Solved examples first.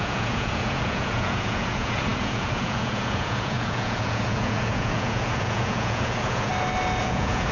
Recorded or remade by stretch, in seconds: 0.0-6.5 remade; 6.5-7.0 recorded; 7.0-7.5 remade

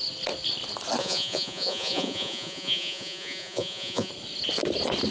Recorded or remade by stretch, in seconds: 0.0-1.0 recorded; 1.0-4.1 remade; 4.1-5.1 recorded

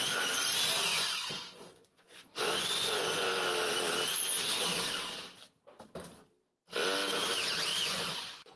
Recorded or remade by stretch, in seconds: 0.0-0.9 recorded; 0.9-3.4 remade; 3.4-7.7 recorded; 7.7-8.6 remade

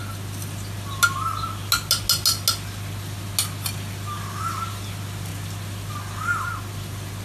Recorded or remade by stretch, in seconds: 0.0-7.2 recorded

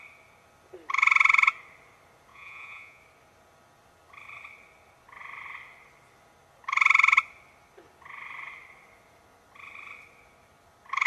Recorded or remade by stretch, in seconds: 0.0-2.3 recorded; 2.3-3.0 remade; 3.0-11.1 recorded

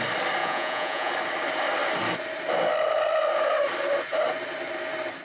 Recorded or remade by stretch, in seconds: 0.0-0.4 recorded; 0.4-1.1 remade; 1.1-5.2 recorded

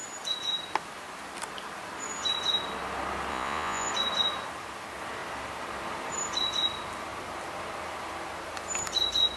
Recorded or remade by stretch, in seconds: 0.0-3.3 recorded; 3.3-3.9 remade; 3.9-9.4 recorded